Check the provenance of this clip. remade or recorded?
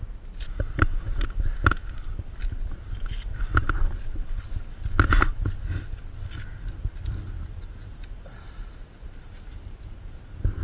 recorded